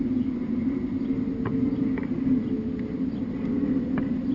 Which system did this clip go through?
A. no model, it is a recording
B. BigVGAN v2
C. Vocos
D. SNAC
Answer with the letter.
A